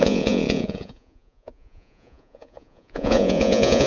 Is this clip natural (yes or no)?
no